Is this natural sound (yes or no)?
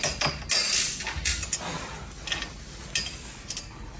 yes